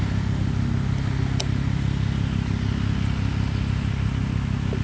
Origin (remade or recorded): recorded